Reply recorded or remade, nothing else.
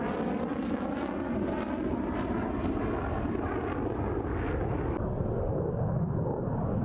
recorded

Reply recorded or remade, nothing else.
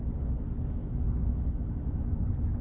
remade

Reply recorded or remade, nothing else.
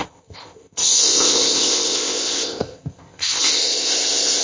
remade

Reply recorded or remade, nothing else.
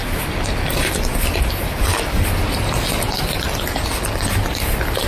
recorded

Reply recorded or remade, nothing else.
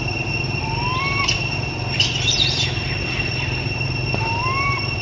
recorded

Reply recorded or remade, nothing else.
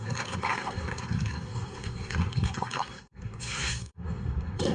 remade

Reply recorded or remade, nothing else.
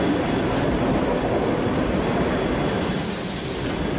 recorded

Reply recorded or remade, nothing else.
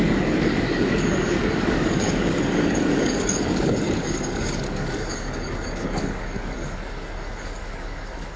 remade